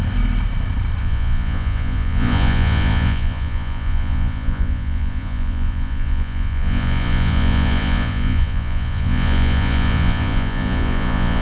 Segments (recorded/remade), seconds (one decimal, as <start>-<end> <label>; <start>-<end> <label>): 0.0-1.0 recorded; 1.0-11.4 remade